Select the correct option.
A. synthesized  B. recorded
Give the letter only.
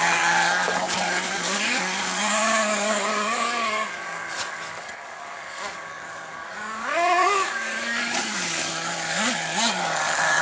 A